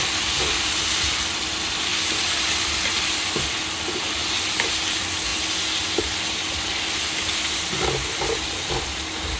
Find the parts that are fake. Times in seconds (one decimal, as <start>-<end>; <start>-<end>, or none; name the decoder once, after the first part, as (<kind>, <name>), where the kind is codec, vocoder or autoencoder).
0.0-1.9 (vocoder, BigVGAN v2); 3.0-4.2; 4.7-5.3; 6.2-9.4